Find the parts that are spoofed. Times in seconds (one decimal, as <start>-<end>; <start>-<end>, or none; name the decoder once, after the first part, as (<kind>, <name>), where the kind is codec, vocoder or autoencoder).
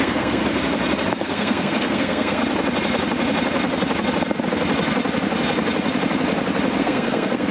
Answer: 0.0-0.4 (codec, SNAC); 1.1-2.4; 6.8-7.5